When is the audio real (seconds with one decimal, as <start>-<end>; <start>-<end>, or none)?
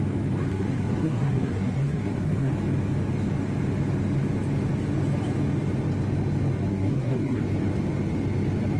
0.0-0.5; 2.5-6.7; 7.4-8.8